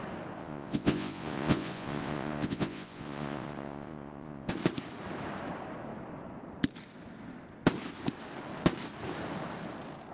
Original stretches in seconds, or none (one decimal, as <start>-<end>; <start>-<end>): 0.0-0.4; 4.5-10.1